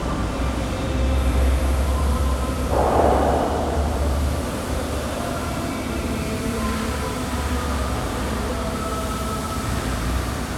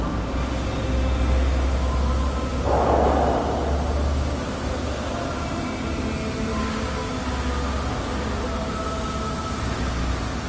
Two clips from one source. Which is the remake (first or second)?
first